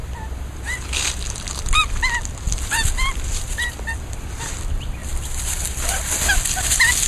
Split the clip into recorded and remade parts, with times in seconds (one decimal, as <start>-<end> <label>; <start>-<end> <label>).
0.0-7.1 recorded